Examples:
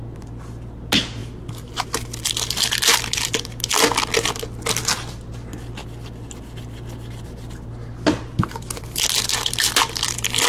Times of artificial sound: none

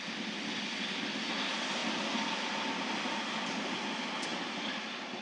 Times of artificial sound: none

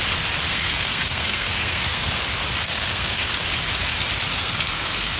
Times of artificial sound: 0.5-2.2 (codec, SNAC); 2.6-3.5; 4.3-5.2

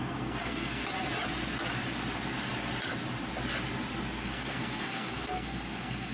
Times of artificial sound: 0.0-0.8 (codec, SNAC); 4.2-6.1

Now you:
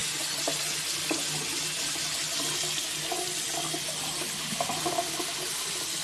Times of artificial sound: none

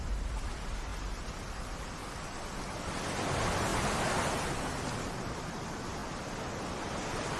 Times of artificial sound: none

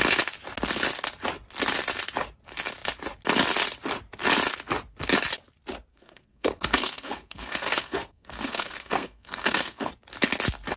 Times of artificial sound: 5.9-9.9 (codec, SNAC)